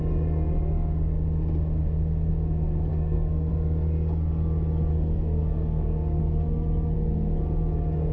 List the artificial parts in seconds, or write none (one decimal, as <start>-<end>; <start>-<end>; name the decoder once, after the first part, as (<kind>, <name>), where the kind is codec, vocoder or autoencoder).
2.9-3.5 (codec, SNAC); 4.9-6.2